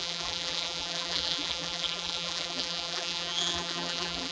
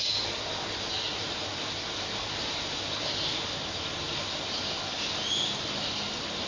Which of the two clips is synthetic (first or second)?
first